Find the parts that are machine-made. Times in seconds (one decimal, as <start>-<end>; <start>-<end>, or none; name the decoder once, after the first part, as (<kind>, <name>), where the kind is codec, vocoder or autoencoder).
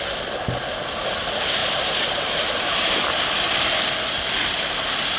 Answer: none